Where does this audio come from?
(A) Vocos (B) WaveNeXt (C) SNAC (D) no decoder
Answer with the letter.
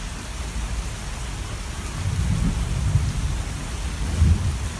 D